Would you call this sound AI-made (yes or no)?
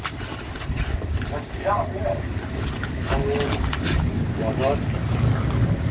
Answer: no